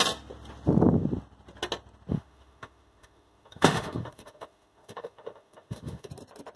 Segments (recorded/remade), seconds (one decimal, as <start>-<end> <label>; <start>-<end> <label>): 0.0-2.1 recorded; 2.1-6.1 remade; 6.1-6.6 recorded